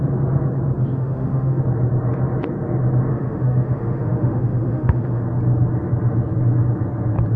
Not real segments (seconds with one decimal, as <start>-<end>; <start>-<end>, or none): 0.8-1.6; 3.1-5.2